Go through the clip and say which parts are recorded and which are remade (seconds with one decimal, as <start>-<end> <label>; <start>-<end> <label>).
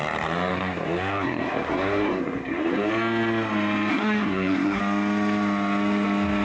0.0-0.5 recorded; 0.5-2.9 remade; 2.9-3.9 recorded; 3.9-4.8 remade; 4.8-6.4 recorded